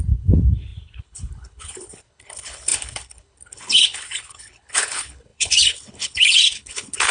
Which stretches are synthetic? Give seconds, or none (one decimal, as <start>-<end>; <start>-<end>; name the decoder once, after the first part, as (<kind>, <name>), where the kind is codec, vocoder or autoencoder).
0.0-7.1 (codec, HILCodec)